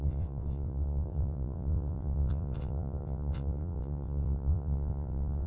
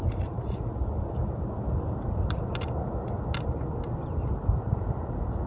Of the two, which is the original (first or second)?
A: second